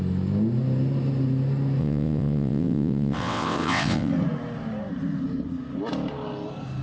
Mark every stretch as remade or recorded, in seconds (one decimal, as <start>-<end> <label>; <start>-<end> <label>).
0.0-1.8 recorded; 1.8-4.1 remade; 4.1-6.8 recorded